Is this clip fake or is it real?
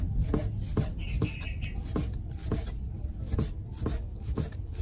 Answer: real